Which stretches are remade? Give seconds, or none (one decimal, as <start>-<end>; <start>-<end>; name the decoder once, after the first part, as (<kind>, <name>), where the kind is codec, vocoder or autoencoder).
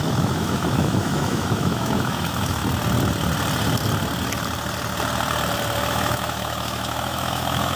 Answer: 0.0-2.6 (autoencoder, DAC-VAE); 5.9-7.8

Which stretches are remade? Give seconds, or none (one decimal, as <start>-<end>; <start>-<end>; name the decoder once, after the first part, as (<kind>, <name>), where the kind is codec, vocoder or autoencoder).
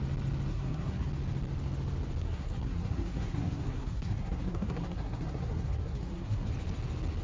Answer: 0.5-1.1 (codec, SNAC); 2.2-6.5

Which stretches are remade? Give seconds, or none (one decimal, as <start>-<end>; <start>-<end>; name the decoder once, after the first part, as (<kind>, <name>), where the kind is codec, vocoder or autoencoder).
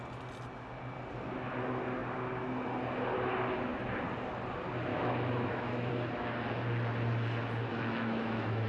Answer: 4.9-5.9 (autoencoder, DAC-VAE); 7.7-8.7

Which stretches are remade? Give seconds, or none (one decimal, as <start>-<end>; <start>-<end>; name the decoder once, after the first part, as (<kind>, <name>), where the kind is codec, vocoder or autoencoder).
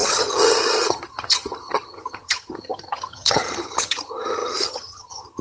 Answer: 0.0-5.4 (vocoder, HiFi-GAN)